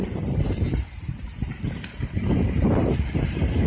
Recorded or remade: remade